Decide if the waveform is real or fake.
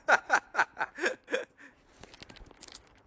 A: real